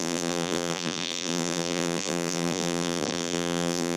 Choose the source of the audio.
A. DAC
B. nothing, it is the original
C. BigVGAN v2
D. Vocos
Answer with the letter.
C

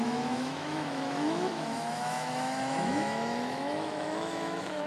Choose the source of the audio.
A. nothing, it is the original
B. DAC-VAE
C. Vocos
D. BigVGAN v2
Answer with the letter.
B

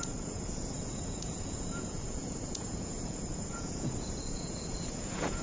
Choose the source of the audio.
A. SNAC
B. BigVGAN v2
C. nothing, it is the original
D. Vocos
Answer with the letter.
D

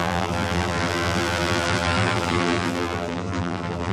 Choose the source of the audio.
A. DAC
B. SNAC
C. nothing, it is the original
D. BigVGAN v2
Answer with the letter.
D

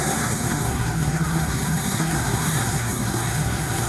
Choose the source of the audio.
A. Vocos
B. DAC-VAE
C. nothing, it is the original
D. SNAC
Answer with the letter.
D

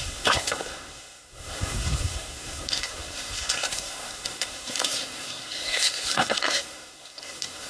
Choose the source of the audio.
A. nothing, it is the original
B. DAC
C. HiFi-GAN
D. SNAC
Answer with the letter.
D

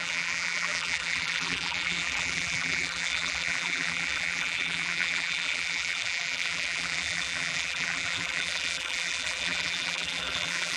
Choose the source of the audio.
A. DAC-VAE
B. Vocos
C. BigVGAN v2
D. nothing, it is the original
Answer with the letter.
C